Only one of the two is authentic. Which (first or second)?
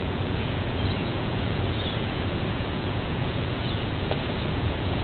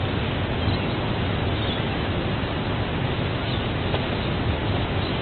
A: second